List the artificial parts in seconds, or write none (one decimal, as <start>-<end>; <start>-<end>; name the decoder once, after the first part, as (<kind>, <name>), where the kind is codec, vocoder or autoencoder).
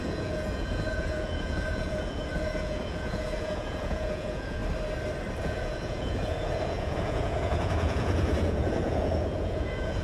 0.0-4.6 (vocoder, Vocos); 5.4-10.0